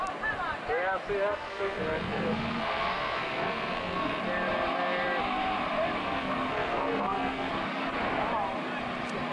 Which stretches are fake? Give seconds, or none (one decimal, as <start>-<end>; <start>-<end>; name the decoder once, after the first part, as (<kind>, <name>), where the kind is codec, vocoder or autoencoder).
1.3-4.2 (codec, SNAC); 6.0-7.5